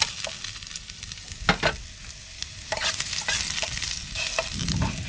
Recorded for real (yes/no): yes